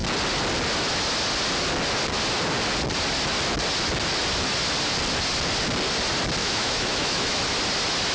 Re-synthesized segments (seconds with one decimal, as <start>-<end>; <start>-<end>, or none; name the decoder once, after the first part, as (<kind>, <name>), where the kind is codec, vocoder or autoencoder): 6.4-7.4 (autoencoder, DAC-VAE)